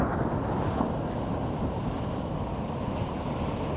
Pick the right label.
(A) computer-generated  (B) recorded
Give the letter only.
B